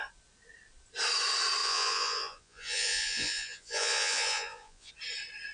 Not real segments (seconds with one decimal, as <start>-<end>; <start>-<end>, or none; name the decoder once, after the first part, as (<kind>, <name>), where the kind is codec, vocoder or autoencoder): 1.6-4.9 (vocoder, Vocos)